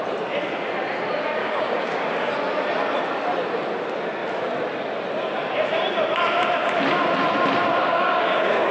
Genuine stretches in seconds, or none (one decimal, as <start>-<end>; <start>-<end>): 0.0-1.4; 2.3-7.8